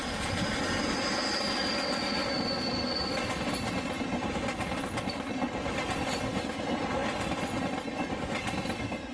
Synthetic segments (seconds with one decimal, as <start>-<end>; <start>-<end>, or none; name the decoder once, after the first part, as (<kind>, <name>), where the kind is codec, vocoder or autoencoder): none